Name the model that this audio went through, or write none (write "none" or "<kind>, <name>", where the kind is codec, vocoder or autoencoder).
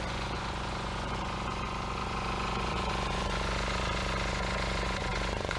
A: vocoder, Vocos